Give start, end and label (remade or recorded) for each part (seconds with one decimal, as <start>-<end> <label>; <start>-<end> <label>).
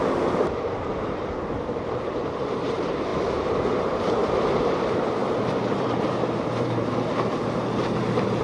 0.0-8.4 remade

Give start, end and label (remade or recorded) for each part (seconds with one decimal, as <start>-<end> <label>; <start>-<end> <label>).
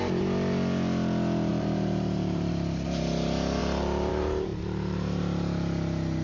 0.0-1.5 recorded; 1.5-2.5 remade; 2.5-4.5 recorded; 4.5-5.2 remade; 5.2-6.2 recorded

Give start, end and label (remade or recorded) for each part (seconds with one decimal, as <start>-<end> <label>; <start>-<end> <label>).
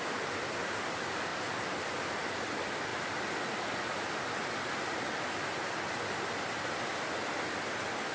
0.0-2.9 recorded; 2.9-6.5 remade; 6.5-8.1 recorded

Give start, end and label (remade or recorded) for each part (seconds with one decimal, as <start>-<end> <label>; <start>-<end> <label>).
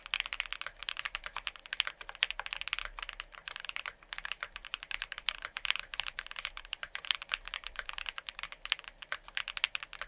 0.0-0.8 recorded; 0.8-1.6 remade; 1.6-3.4 recorded; 3.4-8.4 remade; 8.4-10.1 recorded